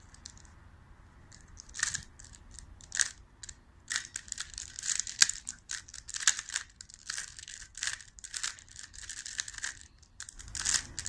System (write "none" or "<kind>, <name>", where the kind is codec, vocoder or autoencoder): none